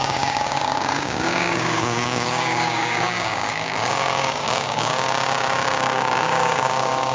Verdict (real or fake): fake